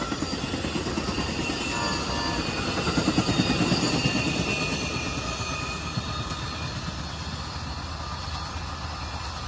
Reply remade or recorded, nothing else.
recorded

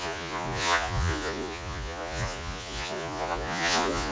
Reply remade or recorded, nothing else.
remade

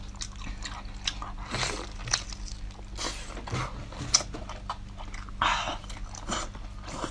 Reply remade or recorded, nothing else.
recorded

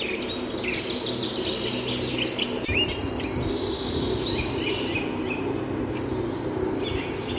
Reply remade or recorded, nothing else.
recorded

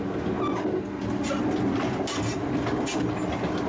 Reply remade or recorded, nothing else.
recorded